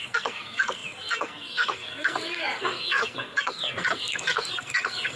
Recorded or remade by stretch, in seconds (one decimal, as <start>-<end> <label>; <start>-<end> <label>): 0.0-5.2 remade